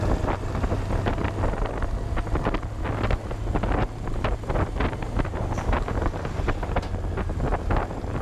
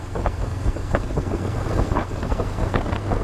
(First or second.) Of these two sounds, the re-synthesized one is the second